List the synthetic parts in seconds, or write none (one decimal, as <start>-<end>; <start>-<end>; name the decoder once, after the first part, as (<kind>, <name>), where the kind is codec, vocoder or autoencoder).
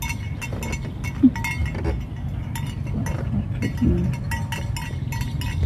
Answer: none